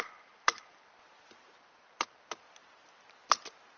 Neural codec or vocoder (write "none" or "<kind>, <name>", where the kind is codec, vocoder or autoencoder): none